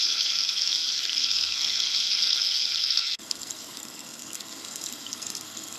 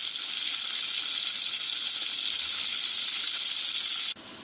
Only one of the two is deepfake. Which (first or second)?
first